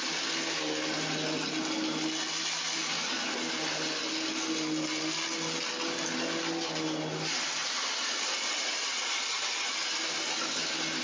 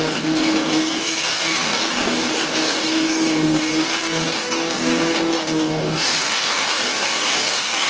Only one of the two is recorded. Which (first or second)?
first